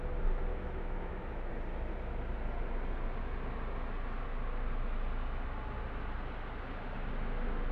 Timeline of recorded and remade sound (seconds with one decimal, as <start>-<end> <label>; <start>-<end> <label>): 0.0-0.5 recorded; 0.5-1.5 remade; 1.5-7.7 recorded